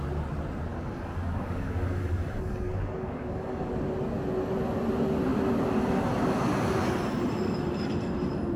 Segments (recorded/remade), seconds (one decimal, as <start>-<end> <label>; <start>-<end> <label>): 0.0-0.7 recorded; 0.7-3.7 remade; 3.7-8.6 recorded